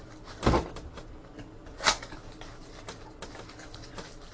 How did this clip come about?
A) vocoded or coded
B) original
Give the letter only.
B